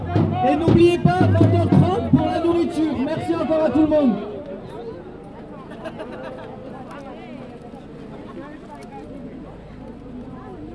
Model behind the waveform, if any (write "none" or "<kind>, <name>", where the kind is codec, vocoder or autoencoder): none